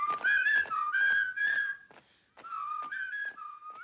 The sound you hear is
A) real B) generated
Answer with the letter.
A